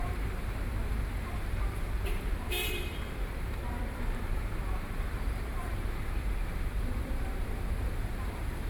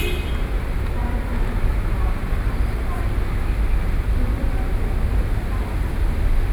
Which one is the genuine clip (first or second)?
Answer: second